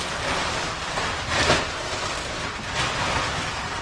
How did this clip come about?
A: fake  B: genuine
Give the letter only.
B